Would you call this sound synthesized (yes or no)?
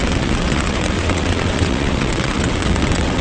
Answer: yes